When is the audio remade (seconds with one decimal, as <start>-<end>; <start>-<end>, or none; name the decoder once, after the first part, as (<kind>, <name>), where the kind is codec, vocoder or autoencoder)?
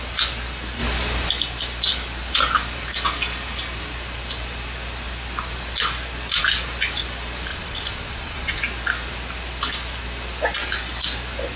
7.5-8.6 (vocoder, Vocos)